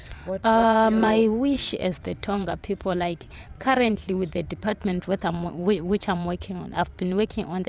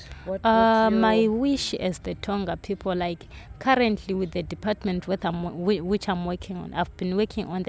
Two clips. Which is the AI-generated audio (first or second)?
first